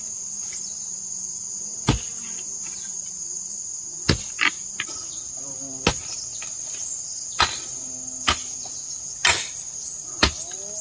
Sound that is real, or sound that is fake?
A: real